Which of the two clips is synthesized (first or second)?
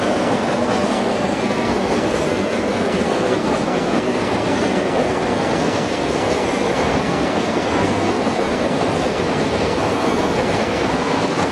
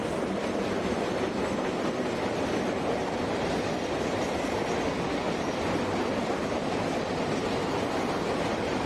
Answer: first